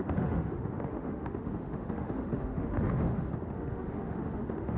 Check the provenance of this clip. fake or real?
fake